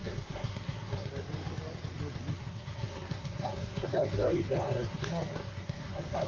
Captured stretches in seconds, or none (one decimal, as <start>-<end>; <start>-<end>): 1.1-2.3